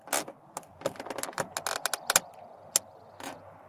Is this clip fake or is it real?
real